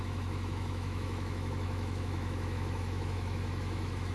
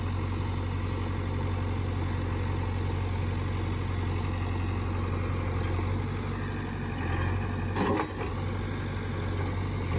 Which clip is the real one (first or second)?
second